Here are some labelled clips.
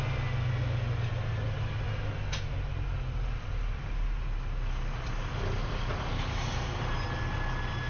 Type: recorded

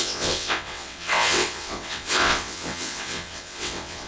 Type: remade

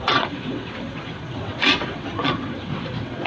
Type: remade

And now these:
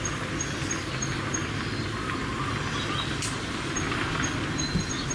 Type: recorded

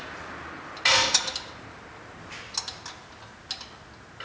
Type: recorded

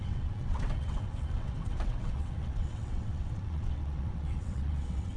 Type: remade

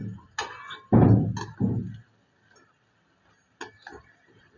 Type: recorded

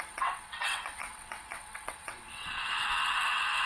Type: remade